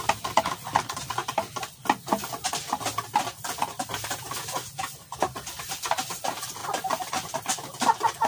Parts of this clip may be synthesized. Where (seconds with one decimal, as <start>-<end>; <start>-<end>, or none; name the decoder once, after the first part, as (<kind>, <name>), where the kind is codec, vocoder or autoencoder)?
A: 6.6-7.1 (vocoder, BigVGAN v2)